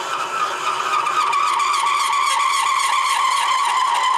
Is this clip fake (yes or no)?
no